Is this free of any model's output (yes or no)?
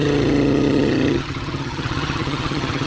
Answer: no